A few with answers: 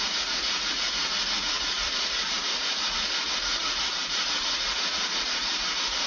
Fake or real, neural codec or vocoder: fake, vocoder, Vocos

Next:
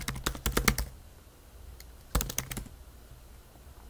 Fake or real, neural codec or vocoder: real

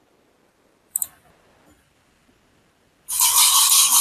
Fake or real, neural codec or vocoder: real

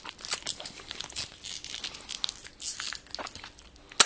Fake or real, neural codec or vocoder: real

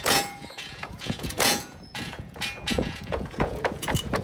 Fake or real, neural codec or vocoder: fake, vocoder, Vocos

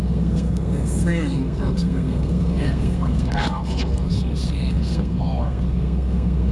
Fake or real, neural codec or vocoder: fake, codec, SNAC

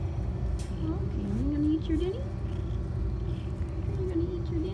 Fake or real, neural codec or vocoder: real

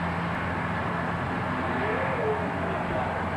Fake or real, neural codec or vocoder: real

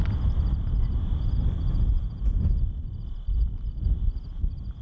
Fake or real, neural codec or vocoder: real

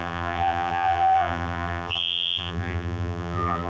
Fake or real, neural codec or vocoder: fake, vocoder, BigVGAN v2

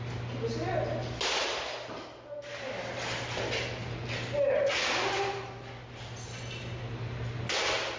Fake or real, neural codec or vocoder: real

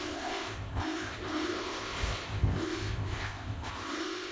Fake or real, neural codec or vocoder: fake, codec, ZipCodec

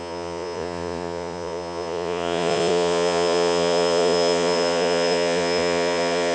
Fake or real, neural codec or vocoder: fake, vocoder, Vocos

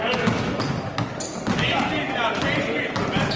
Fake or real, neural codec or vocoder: real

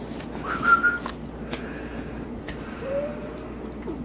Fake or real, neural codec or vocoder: real